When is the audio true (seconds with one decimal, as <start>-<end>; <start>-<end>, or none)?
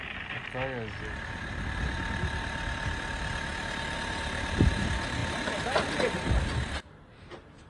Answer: 0.4-3.6